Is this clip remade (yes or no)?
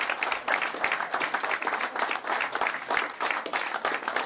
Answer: no